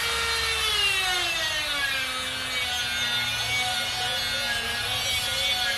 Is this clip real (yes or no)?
yes